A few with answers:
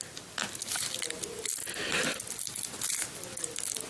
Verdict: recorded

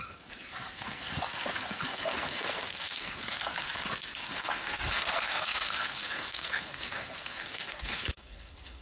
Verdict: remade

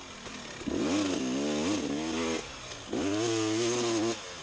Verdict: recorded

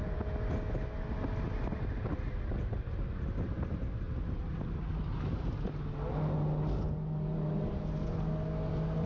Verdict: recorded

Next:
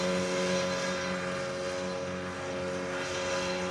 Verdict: recorded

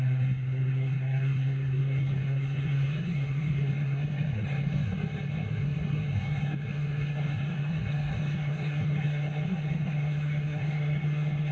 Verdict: remade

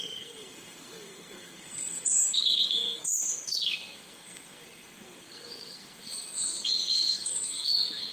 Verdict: remade